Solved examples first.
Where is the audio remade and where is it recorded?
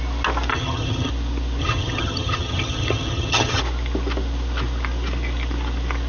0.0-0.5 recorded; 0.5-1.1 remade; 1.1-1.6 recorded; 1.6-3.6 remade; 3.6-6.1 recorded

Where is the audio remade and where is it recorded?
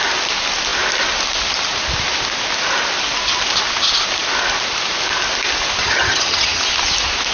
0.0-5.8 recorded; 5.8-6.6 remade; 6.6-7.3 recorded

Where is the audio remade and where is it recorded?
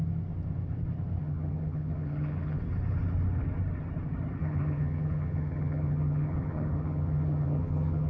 0.0-1.2 recorded; 1.2-2.6 remade; 2.6-4.4 recorded; 4.4-8.1 remade